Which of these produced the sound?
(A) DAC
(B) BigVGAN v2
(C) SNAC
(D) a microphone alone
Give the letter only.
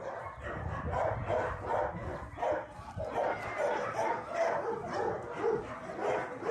D